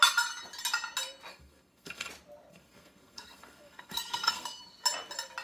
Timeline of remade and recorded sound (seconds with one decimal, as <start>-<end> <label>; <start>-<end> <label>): 0.0-1.3 recorded; 1.3-2.1 remade; 2.1-2.5 recorded; 2.5-4.6 remade; 4.6-5.4 recorded